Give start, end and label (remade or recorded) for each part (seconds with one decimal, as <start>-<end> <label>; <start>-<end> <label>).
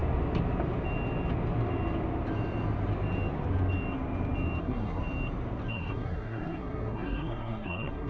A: 0.0-4.6 recorded; 4.6-5.0 remade; 5.0-5.7 recorded; 5.7-8.1 remade